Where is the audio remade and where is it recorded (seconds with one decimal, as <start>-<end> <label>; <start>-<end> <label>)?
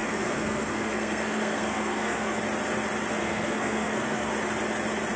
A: 0.0-2.4 remade; 2.4-3.2 recorded; 3.2-4.3 remade; 4.3-5.2 recorded